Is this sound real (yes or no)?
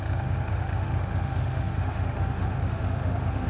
no